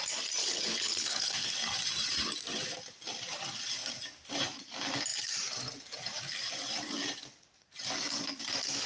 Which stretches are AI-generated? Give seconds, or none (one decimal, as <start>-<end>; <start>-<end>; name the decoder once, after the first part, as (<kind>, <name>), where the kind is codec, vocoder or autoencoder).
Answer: 0.4-1.5 (codec, HILCodec)